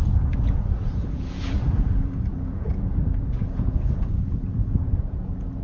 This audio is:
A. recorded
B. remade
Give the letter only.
B